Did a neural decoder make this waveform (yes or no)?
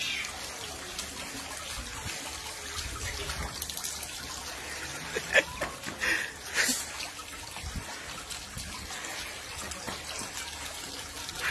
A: no